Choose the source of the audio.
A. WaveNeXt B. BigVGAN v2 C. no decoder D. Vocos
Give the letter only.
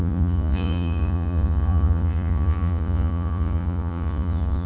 D